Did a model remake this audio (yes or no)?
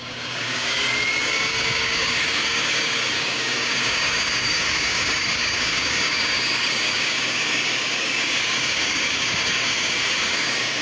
yes